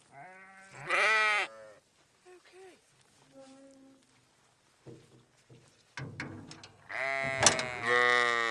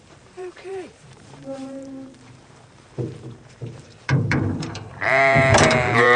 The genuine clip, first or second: first